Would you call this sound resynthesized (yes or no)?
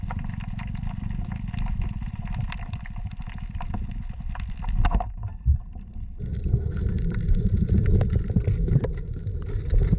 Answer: yes